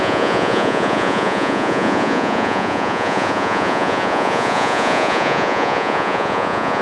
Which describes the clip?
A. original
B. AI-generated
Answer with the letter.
B